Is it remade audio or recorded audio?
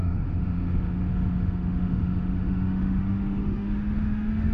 remade